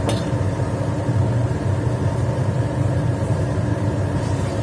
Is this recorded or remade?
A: remade